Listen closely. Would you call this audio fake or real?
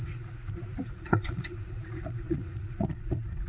fake